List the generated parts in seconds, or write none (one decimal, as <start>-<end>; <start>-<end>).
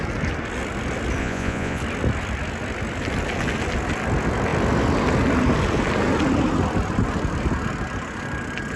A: 1.2-1.8